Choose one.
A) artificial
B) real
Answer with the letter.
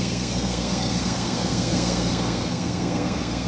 A